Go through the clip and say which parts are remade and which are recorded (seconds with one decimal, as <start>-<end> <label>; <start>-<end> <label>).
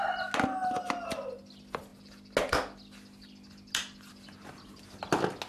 0.0-0.6 recorded; 0.6-1.4 remade; 1.4-5.5 recorded